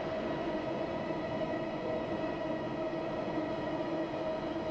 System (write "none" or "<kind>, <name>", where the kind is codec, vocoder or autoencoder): vocoder, Vocos